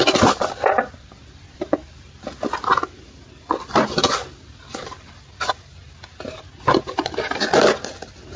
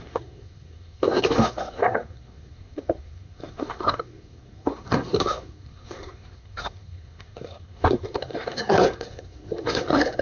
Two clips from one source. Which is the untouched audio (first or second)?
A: first